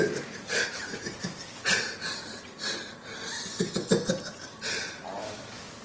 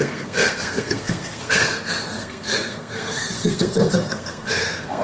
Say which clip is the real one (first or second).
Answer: first